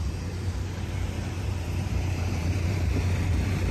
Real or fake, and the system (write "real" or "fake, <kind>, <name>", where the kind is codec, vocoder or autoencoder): fake, vocoder, BigVGAN v2